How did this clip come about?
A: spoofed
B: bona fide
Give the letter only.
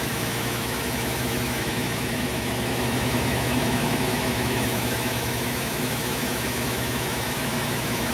A